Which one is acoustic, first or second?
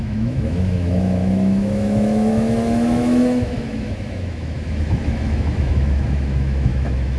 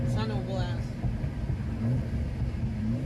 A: second